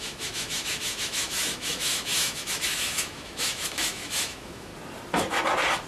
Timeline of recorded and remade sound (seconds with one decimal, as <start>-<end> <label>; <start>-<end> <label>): 0.0-4.7 remade; 4.7-5.9 recorded

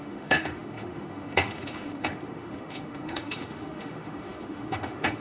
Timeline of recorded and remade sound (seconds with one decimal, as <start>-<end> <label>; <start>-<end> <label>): 0.0-5.2 remade

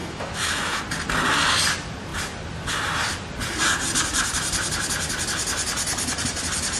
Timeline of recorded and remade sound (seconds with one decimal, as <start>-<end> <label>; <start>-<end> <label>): 0.0-0.8 remade; 0.8-6.8 recorded

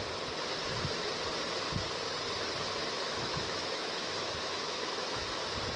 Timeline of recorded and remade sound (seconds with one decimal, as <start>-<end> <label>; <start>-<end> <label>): 0.0-2.8 recorded; 2.8-5.2 remade; 5.2-5.8 recorded

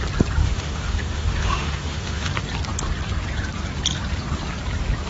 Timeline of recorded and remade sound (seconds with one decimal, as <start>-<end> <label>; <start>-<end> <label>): 0.0-0.4 recorded; 0.4-2.3 remade; 2.3-5.1 recorded

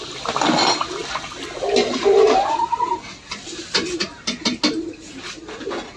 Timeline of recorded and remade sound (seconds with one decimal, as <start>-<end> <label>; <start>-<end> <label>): 0.0-6.0 recorded